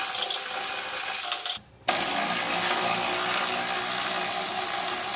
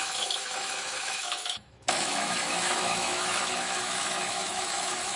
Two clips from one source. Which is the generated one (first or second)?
second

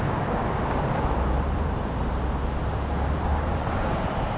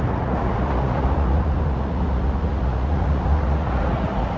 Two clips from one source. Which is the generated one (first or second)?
second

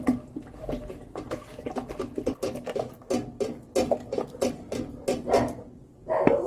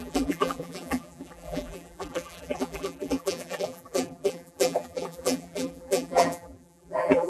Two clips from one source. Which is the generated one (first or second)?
second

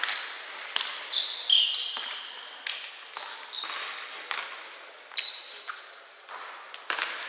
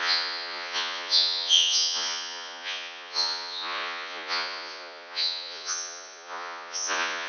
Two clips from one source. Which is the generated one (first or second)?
second